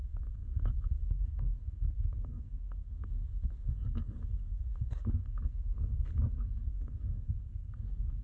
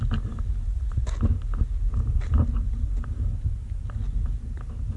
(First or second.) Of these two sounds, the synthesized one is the first